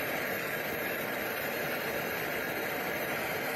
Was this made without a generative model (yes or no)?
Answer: no